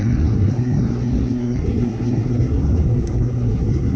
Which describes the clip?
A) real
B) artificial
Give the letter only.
B